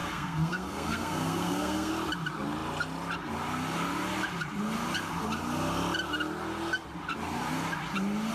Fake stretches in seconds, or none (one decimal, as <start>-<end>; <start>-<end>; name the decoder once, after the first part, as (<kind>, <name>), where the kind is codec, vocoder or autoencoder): 0.0-1.9 (codec, SNAC)